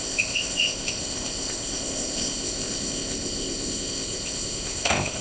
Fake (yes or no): yes